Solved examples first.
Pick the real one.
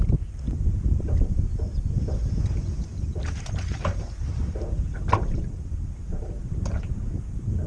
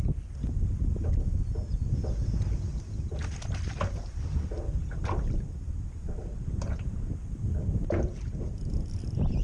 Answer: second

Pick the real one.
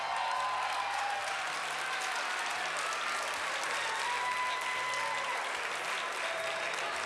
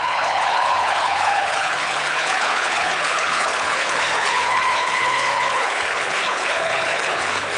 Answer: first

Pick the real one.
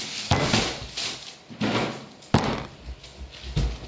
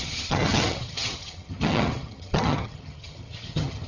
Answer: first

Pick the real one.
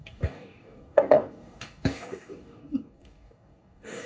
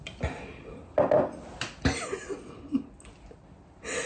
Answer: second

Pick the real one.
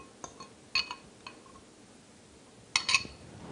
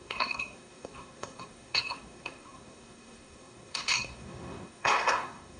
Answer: first